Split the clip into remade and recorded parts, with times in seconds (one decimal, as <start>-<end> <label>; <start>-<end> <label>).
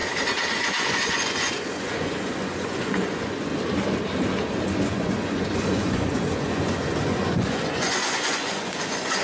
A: 0.0-0.6 recorded; 0.6-3.5 remade; 3.5-4.8 recorded; 4.8-9.2 remade